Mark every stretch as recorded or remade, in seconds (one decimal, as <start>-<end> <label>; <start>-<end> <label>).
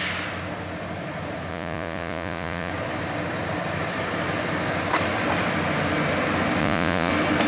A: 0.0-1.5 recorded; 1.5-2.7 remade; 2.7-6.6 recorded; 6.6-7.1 remade; 7.1-7.5 recorded